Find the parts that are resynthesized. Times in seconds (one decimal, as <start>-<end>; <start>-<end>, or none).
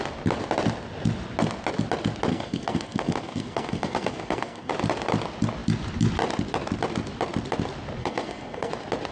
2.3-4.7; 8.0-8.7